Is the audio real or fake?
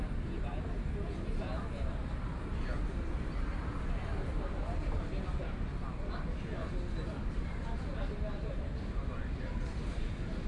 fake